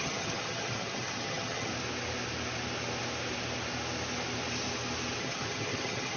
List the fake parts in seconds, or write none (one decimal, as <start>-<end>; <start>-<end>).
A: 0.0-1.7; 5.2-6.2